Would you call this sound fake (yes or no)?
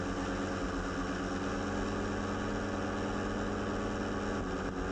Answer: no